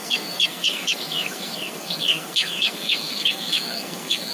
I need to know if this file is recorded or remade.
remade